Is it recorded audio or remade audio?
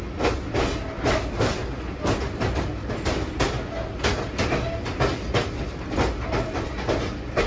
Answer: recorded